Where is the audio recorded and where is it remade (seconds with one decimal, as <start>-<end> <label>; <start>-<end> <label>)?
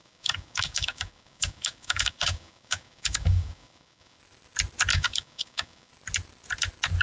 0.0-4.2 remade; 4.2-4.9 recorded; 4.9-5.9 remade; 5.9-7.0 recorded